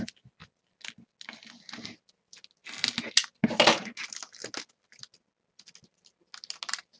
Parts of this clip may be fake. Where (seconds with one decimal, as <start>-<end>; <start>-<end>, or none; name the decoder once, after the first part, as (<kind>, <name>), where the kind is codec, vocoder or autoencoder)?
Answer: none